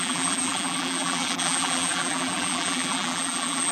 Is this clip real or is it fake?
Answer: fake